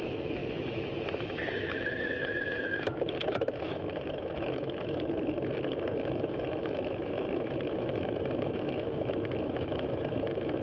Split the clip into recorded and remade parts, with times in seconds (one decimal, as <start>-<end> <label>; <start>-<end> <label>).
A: 0.0-10.6 remade

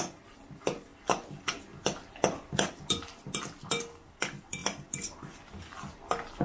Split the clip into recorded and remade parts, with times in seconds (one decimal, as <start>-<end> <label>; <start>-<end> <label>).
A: 0.0-6.4 recorded

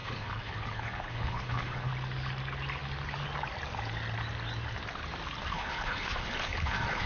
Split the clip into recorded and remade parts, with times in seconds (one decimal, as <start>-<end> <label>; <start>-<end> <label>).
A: 0.0-1.9 remade; 1.9-5.5 recorded; 5.5-7.1 remade

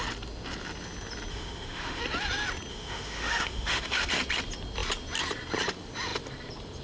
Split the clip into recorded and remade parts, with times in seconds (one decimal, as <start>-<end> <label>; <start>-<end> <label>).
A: 0.0-1.3 recorded; 1.3-2.0 remade; 2.0-2.7 recorded; 2.7-4.1 remade; 4.1-6.8 recorded

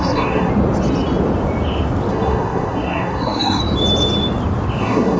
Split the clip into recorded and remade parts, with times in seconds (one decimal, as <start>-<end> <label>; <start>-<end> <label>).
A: 0.0-0.5 remade; 0.5-2.1 recorded; 2.1-3.6 remade; 3.6-4.8 recorded; 4.8-5.2 remade

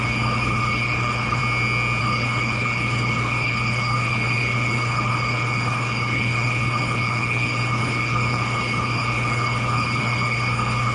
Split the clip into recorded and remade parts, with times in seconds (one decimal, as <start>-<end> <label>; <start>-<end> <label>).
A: 0.0-1.4 remade; 1.4-2.0 recorded; 2.0-10.9 remade